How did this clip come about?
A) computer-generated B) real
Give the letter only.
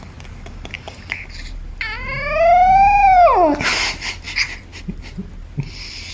B